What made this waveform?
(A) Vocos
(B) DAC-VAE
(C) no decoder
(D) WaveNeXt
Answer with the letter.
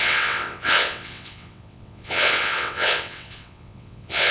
D